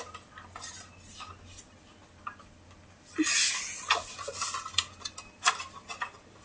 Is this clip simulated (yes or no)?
no